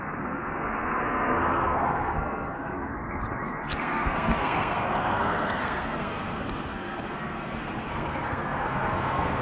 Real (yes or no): no